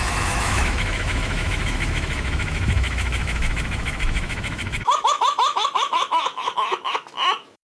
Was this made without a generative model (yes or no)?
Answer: no